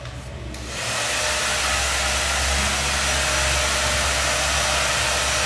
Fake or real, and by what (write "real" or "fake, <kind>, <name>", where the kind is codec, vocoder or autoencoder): real